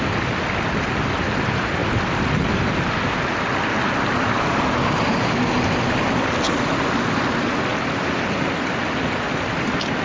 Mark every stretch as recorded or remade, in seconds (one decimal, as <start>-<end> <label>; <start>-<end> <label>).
0.0-10.0 recorded